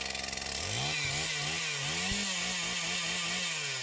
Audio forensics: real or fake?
real